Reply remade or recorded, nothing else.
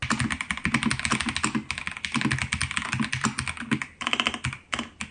recorded